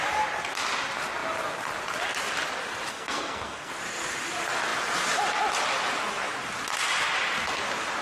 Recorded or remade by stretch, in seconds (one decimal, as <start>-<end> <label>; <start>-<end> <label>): 0.0-2.9 recorded; 2.9-3.7 remade; 3.7-8.0 recorded

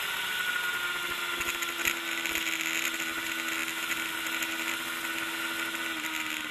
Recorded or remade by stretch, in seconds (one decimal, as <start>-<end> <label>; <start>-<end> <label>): 0.0-6.5 recorded

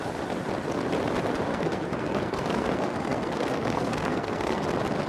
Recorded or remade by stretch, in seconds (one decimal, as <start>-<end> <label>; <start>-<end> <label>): 0.0-1.5 recorded; 1.5-4.6 remade; 4.6-5.1 recorded

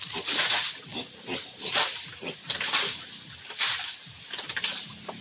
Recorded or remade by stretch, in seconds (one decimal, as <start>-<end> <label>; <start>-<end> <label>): 0.0-5.2 recorded

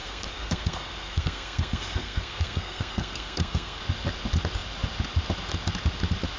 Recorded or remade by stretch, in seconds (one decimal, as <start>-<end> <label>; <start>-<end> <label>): 0.0-3.8 remade; 3.8-6.4 recorded